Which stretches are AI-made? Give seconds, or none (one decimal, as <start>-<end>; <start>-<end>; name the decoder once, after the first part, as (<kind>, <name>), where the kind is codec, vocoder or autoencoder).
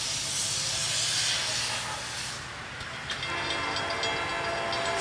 none